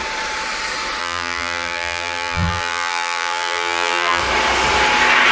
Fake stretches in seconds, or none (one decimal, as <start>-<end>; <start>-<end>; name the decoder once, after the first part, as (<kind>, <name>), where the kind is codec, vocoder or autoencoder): 1.0-4.2 (vocoder, BigVGAN v2)